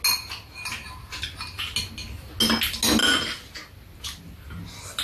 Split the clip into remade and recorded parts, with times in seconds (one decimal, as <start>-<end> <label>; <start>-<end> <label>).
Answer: 0.0-5.0 recorded